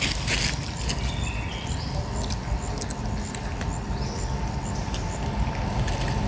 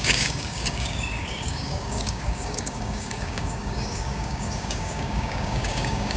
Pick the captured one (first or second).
first